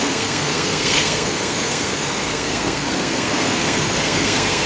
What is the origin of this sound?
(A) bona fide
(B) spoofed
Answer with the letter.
B